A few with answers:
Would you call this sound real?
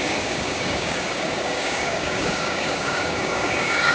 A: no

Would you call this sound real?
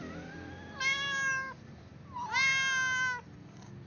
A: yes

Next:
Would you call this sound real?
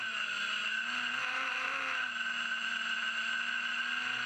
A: yes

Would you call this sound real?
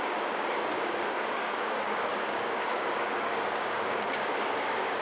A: no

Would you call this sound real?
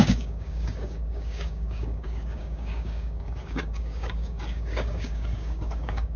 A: no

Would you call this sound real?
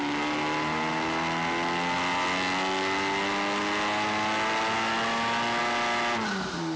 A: yes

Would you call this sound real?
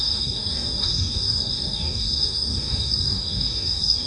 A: no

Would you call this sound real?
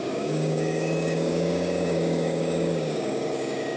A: no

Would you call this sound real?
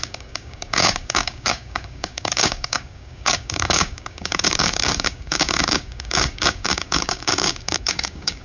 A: no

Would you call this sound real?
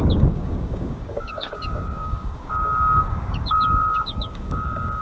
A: no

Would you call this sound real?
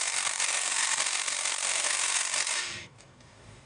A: no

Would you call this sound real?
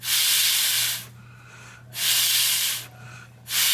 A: yes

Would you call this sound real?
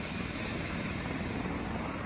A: yes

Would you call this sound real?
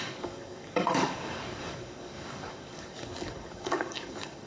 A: no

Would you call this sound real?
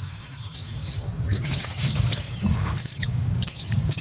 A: no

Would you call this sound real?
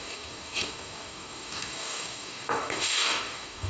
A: no